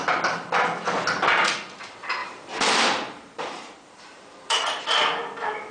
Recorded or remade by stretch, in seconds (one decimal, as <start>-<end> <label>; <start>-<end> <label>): 0.0-2.2 recorded; 2.2-4.8 remade; 4.8-5.7 recorded